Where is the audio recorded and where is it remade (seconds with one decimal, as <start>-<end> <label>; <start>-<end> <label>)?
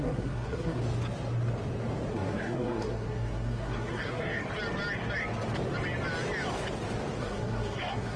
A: 0.0-0.8 remade; 0.8-2.1 recorded; 2.1-4.4 remade; 4.4-7.2 recorded; 7.2-8.2 remade